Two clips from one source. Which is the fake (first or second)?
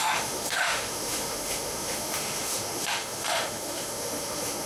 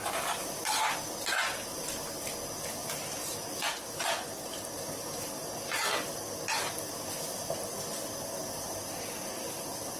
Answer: first